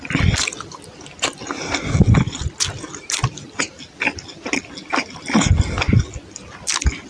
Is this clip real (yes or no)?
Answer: yes